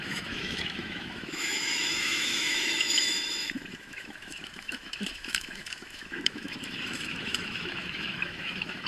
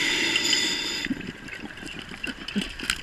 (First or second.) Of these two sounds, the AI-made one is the first